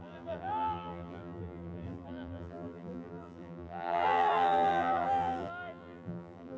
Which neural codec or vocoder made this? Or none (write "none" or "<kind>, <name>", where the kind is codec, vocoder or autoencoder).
vocoder, BigVGAN v2